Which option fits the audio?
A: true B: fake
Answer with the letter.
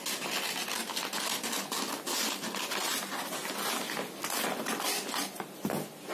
A